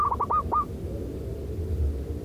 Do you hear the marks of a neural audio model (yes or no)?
no